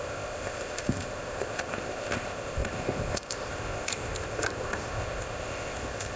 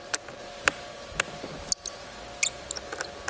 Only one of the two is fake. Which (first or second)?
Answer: first